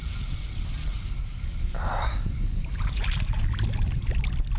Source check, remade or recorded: recorded